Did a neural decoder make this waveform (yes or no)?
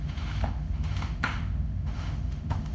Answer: yes